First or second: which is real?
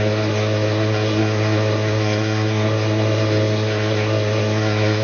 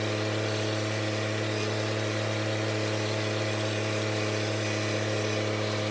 second